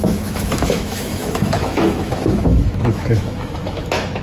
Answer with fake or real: fake